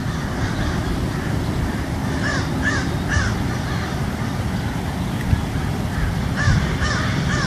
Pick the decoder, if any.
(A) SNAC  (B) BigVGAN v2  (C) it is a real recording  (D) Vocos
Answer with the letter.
C